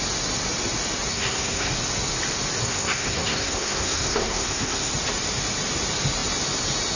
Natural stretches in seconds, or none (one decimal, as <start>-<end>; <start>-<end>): 0.0-1.1; 1.7-2.6; 4.9-7.0